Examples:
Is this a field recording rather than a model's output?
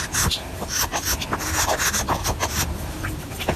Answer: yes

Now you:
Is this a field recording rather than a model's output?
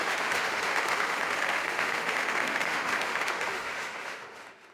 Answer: no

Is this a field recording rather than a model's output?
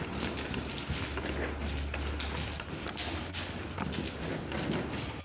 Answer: yes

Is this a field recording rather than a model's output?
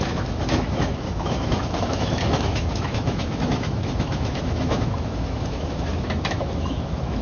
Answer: no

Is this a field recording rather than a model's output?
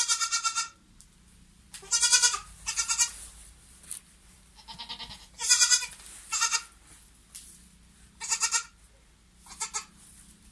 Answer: yes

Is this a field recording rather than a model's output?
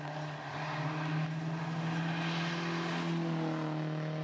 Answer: yes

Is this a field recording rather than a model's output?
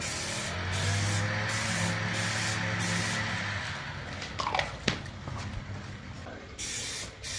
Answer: yes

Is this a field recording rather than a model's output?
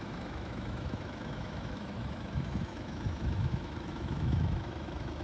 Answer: no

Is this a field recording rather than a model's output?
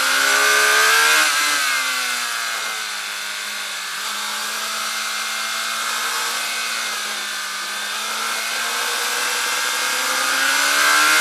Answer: yes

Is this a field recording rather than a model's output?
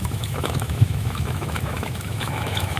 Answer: no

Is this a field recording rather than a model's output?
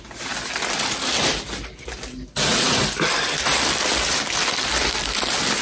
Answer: yes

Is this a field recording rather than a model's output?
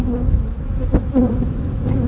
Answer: no